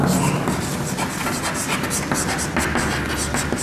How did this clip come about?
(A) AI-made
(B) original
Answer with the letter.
B